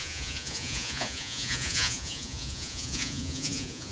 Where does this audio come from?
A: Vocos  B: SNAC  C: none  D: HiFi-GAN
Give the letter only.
A